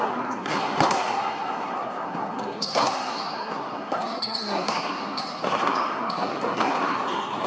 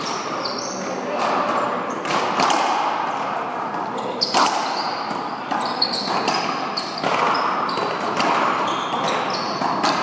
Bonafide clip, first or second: second